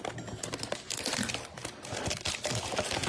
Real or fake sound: real